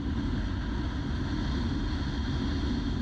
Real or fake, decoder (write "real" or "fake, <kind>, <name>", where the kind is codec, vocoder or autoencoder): real